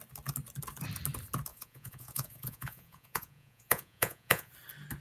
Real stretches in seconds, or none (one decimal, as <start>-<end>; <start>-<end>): 0.0-1.5; 4.5-5.0